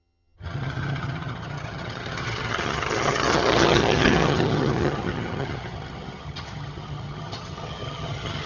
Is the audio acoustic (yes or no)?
no